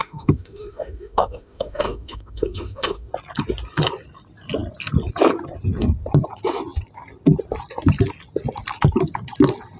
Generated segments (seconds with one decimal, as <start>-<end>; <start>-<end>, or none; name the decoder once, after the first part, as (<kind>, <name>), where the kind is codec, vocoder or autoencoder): 0.0-3.1 (autoencoder, DAC-VAE)